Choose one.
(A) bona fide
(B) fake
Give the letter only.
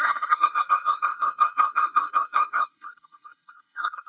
B